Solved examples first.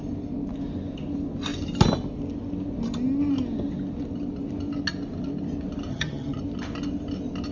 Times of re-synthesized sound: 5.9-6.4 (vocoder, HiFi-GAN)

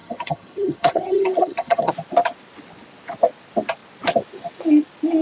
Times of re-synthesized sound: 0.0-1.9 (vocoder, HiFi-GAN)

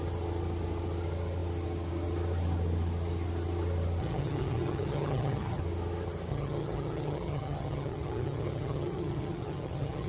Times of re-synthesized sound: 4.0-5.6 (vocoder, HiFi-GAN); 6.3-10.1

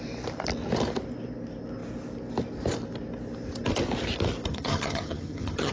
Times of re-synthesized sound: 4.5-5.7 (vocoder, HiFi-GAN)

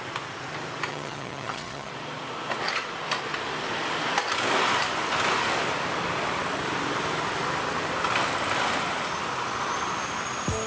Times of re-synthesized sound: 0.9-1.9 (vocoder, HiFi-GAN)

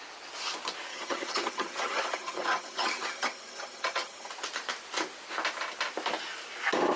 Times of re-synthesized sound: 0.9-4.3 (vocoder, HiFi-GAN)